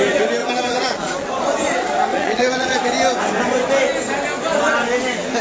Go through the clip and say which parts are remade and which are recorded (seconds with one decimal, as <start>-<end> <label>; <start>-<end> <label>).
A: 0.0-0.4 recorded; 0.4-1.3 remade; 1.3-2.1 recorded; 2.1-2.9 remade; 2.9-5.4 recorded